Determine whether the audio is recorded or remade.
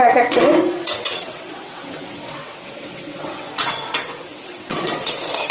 remade